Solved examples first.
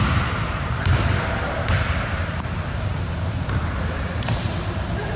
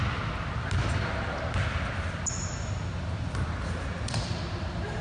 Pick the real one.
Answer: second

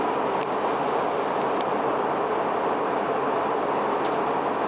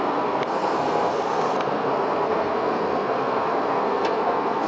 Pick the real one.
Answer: first